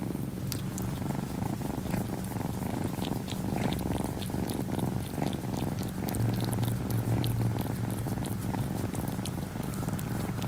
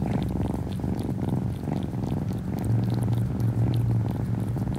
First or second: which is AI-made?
second